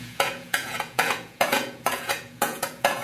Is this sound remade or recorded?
remade